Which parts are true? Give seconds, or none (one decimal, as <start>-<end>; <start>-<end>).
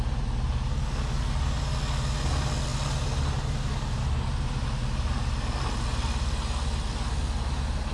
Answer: 0.0-7.9